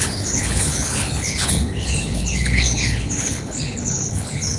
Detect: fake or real fake